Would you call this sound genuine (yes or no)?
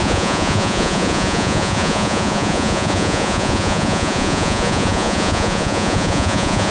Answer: no